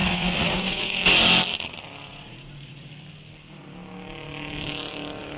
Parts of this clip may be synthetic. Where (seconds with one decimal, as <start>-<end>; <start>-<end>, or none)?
0.0-1.0; 2.1-2.9